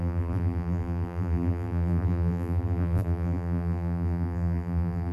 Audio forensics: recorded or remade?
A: remade